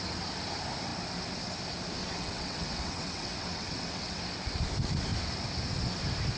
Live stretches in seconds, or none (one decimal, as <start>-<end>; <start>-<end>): 0.0-2.0; 4.2-6.4